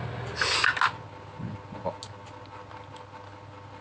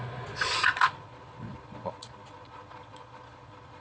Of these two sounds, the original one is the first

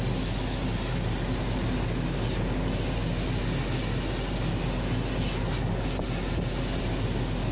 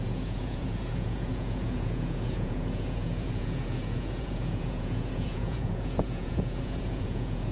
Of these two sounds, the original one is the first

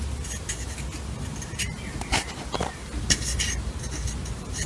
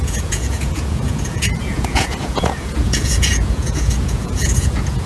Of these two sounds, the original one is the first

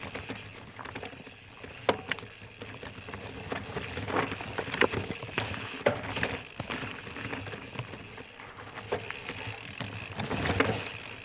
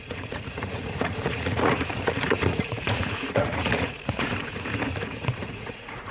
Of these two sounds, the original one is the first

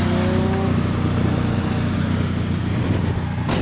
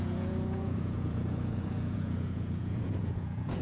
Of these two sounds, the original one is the first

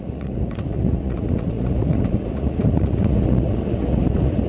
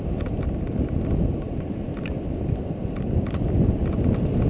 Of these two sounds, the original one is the second